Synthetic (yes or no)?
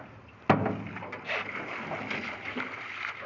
no